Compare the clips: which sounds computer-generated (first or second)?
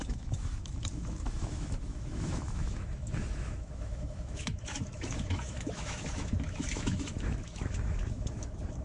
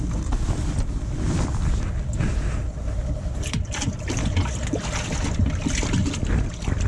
first